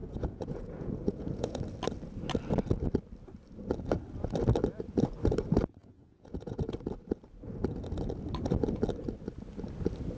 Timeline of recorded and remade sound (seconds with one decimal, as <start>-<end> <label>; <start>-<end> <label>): 0.0-1.6 remade; 1.6-5.8 recorded; 5.8-6.7 remade; 6.7-10.2 recorded